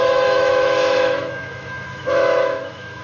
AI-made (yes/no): yes